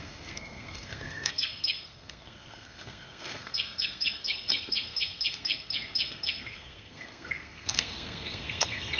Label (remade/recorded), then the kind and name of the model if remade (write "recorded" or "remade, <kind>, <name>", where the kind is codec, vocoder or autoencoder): remade, codec, SNAC